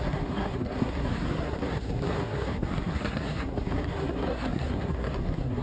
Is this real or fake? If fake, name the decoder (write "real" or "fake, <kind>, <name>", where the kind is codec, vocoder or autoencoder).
fake, codec, SNAC